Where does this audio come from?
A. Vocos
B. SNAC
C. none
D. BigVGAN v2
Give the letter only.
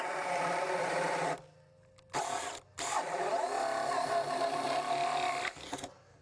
C